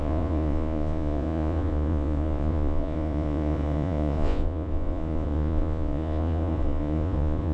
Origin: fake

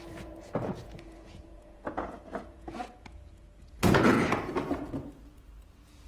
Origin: fake